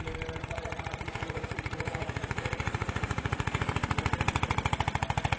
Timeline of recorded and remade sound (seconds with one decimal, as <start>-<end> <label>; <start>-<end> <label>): 0.0-0.4 recorded; 0.4-3.6 remade; 3.6-5.4 recorded